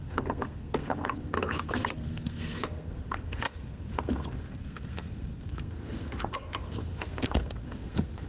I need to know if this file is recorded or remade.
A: remade